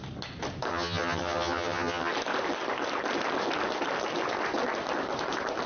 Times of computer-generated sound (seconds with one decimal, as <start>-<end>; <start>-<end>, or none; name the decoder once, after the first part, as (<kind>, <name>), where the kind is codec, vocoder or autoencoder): 0.7-2.1 (vocoder, HiFi-GAN)